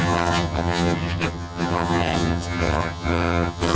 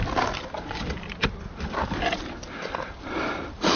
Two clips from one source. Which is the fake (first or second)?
first